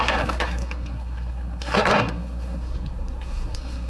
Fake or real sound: fake